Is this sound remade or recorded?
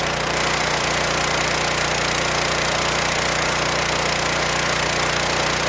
remade